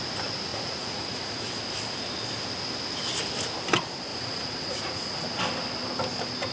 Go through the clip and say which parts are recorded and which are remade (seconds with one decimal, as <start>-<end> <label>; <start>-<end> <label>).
0.0-0.5 recorded; 0.5-1.5 remade; 1.5-4.1 recorded; 4.1-5.4 remade; 5.4-6.5 recorded